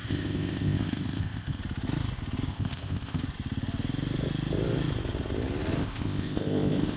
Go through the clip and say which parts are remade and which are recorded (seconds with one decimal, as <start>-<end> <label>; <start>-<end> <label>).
0.0-1.6 remade; 1.6-2.5 recorded; 2.5-3.2 remade; 3.2-5.8 recorded; 5.8-7.0 remade